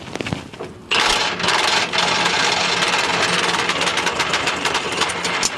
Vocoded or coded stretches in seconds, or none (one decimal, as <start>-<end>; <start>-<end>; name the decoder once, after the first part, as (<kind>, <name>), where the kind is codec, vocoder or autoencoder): 3.9-5.1 (vocoder, BigVGAN v2)